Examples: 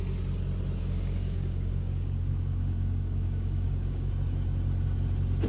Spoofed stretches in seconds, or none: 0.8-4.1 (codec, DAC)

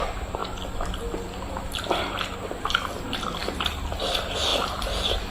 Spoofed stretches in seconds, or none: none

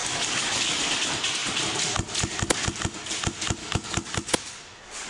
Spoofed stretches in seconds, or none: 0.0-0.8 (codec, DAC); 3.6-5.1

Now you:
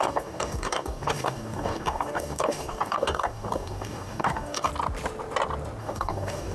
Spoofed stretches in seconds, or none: 0.0-4.7 (codec, DAC); 5.8-6.5

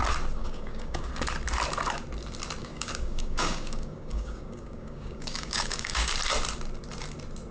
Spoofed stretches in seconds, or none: 0.4-1.1 (codec, DAC); 2.6-6.1

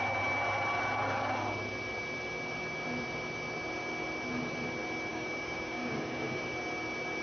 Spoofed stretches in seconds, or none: 5.1-6.4 (codec, DAC)

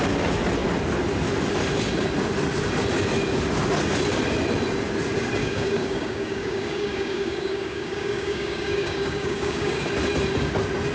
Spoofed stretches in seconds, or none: 5.4-9.9 (codec, DAC)